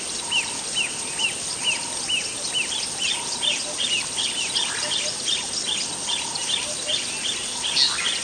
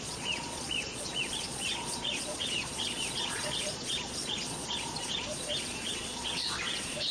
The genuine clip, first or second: first